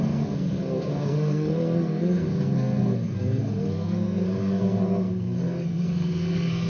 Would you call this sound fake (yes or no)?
yes